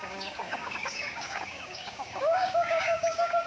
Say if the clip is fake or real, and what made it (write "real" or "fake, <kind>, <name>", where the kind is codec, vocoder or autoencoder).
fake, codec, DAC